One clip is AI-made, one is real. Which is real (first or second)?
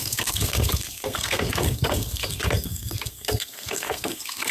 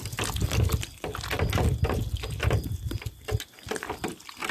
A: second